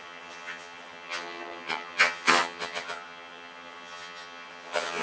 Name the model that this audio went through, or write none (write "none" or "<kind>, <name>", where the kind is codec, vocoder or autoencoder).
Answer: vocoder, HiFi-GAN